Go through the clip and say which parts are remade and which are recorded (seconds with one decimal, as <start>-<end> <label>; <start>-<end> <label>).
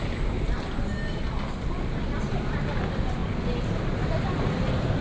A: 0.0-5.0 recorded